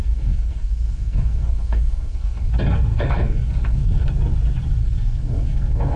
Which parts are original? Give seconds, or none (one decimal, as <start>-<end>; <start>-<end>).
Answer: 2.5-2.9; 4.1-4.8